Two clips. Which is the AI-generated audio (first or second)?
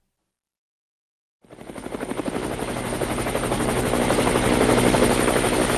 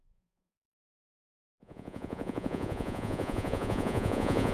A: second